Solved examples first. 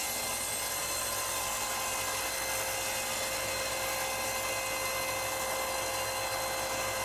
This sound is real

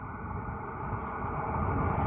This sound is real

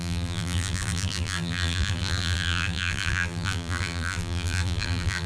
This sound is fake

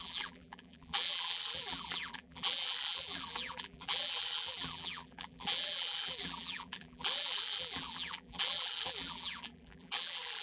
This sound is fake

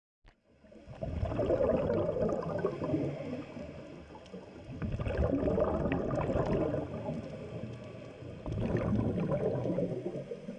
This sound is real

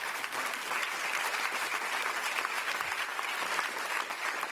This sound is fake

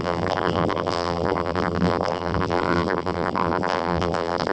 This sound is fake